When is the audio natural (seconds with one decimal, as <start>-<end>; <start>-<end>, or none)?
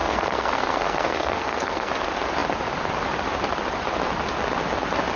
1.9-5.2